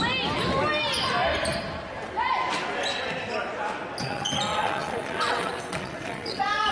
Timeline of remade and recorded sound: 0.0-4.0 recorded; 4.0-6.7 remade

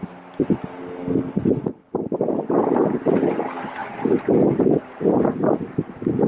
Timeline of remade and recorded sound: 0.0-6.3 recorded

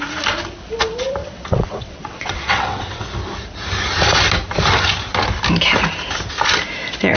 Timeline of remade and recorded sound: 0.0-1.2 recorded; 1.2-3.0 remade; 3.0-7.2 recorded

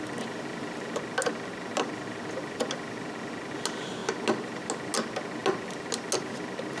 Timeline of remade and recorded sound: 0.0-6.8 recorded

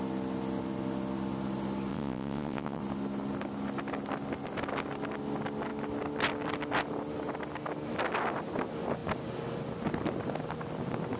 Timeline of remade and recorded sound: 0.0-1.9 recorded; 1.9-2.8 remade; 2.8-11.2 recorded

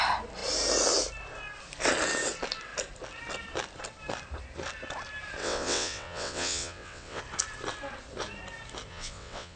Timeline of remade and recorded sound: 0.0-5.4 recorded; 5.4-7.2 remade; 7.2-8.9 recorded; 8.9-9.6 remade

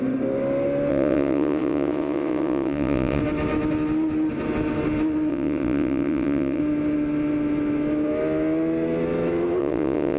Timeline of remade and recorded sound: 0.0-0.9 recorded; 0.9-3.2 remade; 3.2-5.3 recorded; 5.3-6.6 remade; 6.6-9.6 recorded; 9.6-10.2 remade

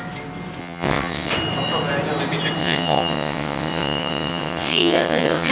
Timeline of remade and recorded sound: 0.0-0.6 recorded; 0.6-1.3 remade; 1.3-2.6 recorded; 2.6-5.5 remade